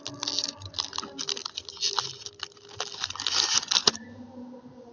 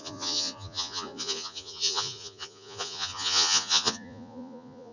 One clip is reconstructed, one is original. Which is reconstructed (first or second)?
second